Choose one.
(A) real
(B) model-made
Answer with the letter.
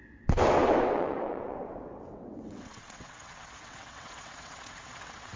B